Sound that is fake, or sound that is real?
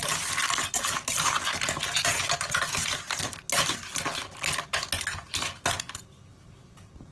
real